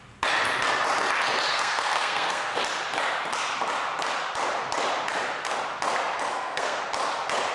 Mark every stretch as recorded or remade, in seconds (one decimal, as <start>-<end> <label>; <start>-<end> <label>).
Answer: 0.0-1.5 recorded; 1.5-2.6 remade; 2.6-6.3 recorded; 6.3-6.8 remade; 6.8-7.5 recorded